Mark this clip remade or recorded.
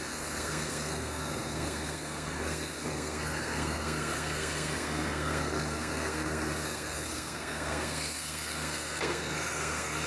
remade